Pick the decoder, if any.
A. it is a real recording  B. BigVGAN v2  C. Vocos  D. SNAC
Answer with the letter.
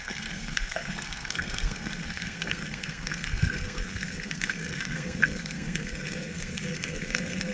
D